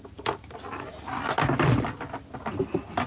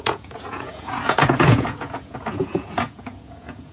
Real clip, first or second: first